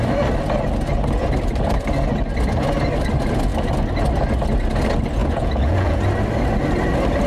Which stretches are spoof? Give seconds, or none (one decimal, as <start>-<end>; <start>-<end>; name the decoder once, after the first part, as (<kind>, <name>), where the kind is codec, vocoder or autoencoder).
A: 5.2-6.0 (vocoder, Vocos)